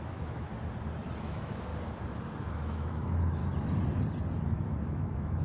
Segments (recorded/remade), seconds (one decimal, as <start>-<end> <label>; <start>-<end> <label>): 0.0-0.5 remade; 0.5-1.2 recorded; 1.2-1.7 remade; 1.7-2.5 recorded; 2.5-3.4 remade; 3.4-4.4 recorded; 4.4-5.4 remade